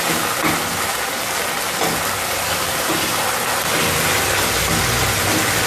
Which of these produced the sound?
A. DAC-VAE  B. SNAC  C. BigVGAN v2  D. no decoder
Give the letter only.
D